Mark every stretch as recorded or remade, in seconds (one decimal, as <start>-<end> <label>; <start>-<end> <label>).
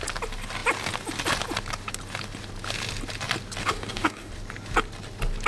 0.0-3.6 recorded; 3.6-4.3 remade; 4.3-5.5 recorded